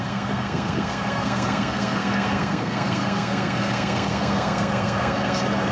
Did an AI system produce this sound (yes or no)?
yes